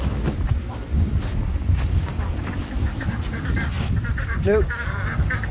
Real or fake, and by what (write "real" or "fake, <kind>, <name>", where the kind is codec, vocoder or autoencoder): real